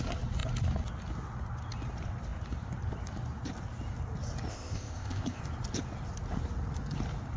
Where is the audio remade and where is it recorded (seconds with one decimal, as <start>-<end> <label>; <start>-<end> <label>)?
0.0-4.5 recorded; 4.5-5.4 remade; 5.4-7.4 recorded